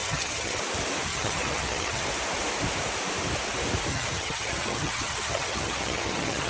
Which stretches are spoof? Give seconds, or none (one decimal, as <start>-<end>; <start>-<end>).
0.0-0.6; 1.1-2.0; 3.9-6.5